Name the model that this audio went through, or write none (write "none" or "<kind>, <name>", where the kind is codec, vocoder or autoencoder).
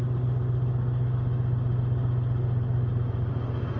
none